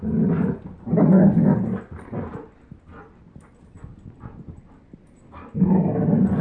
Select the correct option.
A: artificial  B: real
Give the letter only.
B